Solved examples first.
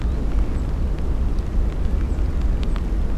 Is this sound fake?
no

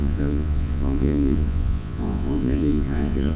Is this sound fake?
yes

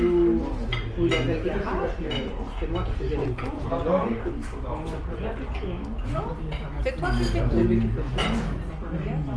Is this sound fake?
no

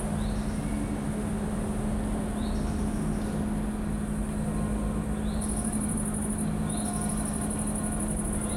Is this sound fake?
no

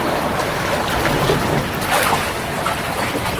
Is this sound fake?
no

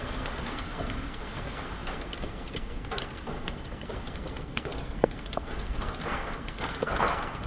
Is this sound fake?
yes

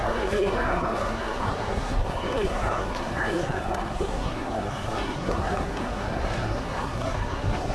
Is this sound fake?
yes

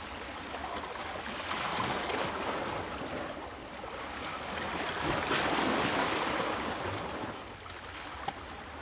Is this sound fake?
no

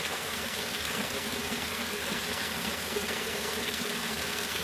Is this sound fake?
yes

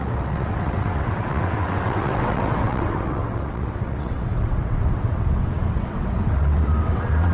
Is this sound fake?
yes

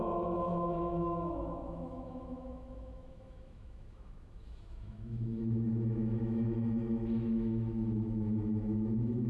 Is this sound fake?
yes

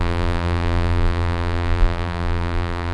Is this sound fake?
yes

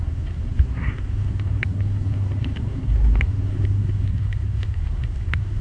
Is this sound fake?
yes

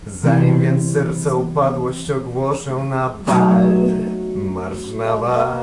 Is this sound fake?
yes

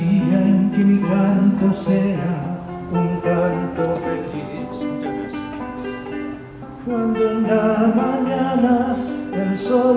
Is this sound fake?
no